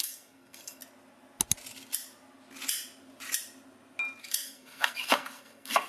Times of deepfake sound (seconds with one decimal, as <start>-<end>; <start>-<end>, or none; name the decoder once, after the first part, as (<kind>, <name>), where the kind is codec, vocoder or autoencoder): 0.0-0.8 (codec, SNAC); 4.2-5.9